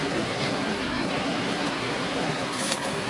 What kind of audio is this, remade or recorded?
remade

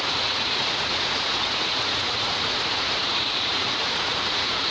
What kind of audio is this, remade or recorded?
remade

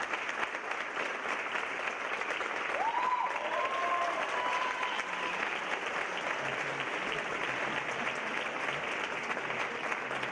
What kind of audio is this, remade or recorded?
recorded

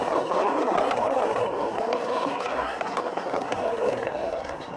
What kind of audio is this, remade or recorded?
remade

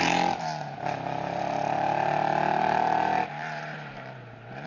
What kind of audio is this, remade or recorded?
remade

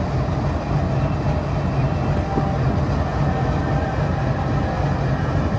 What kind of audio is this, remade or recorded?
recorded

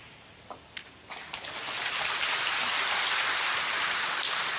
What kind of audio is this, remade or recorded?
recorded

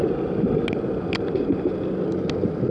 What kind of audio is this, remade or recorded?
recorded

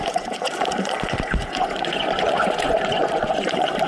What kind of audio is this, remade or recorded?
remade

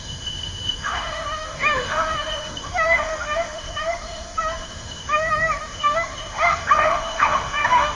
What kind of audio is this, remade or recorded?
remade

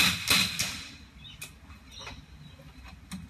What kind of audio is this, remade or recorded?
recorded